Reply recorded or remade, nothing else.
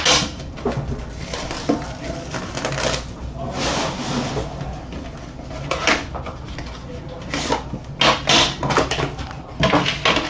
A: recorded